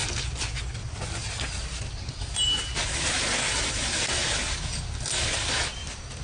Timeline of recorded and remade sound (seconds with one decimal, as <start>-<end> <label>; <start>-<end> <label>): 0.0-6.2 recorded